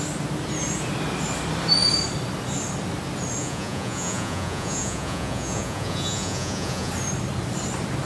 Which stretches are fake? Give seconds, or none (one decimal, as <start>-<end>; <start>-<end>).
3.4-6.9